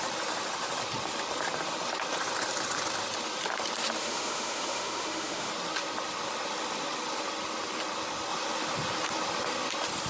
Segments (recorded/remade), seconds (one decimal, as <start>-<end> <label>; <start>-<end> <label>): 0.0-4.0 recorded; 4.0-5.5 remade; 5.5-10.1 recorded